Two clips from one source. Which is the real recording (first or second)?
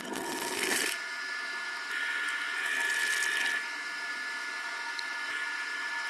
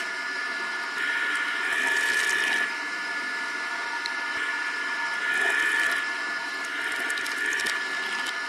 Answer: first